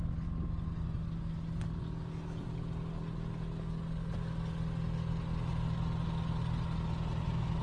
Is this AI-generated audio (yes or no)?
no